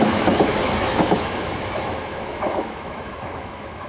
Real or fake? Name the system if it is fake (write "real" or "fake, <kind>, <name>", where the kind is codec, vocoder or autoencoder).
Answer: fake, autoencoder, DAC-VAE